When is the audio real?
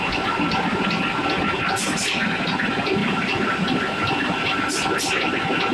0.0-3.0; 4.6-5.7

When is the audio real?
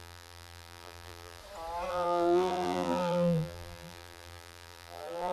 1.4-1.9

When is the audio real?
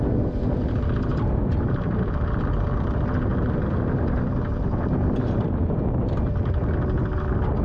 0.0-1.1; 2.1-3.3; 6.3-7.6